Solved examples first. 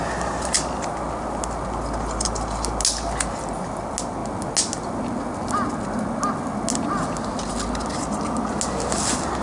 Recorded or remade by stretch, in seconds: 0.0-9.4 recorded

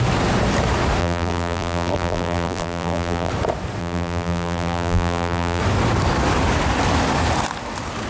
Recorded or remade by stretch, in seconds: 0.0-1.0 recorded; 1.0-3.3 remade; 3.3-3.8 recorded; 3.8-5.6 remade; 5.6-8.1 recorded